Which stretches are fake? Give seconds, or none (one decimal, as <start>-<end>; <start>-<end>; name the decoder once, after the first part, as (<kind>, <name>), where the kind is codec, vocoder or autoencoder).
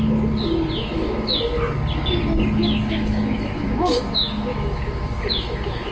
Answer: 0.8-1.4 (autoencoder, DAC-VAE); 2.6-5.9